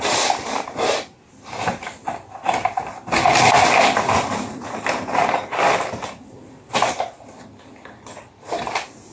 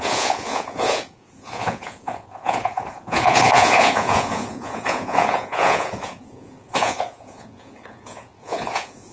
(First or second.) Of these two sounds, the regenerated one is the second